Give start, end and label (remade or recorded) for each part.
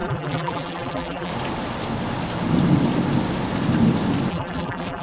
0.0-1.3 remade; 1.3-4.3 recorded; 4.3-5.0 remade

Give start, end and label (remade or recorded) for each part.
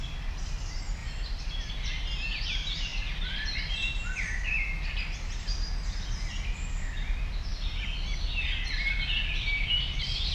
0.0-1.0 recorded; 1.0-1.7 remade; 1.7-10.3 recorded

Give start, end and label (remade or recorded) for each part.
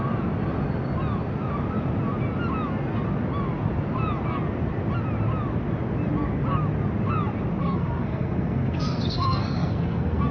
0.0-7.6 recorded; 7.6-10.3 remade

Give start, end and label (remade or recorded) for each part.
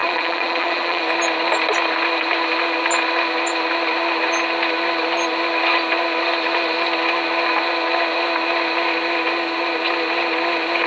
0.0-1.0 remade; 1.0-10.9 recorded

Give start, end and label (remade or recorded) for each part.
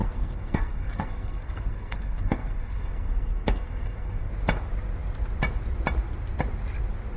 0.0-4.3 remade; 4.3-7.2 recorded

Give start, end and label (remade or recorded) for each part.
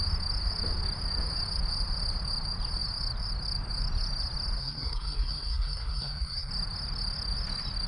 0.0-4.6 recorded; 4.6-6.5 remade; 6.5-7.9 recorded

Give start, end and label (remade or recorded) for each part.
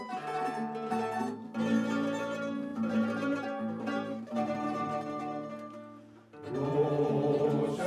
0.0-2.7 recorded; 2.7-5.2 remade; 5.2-6.8 recorded; 6.8-7.4 remade; 7.4-7.9 recorded